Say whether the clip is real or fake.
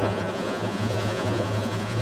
fake